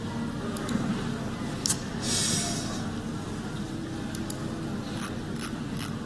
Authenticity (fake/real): real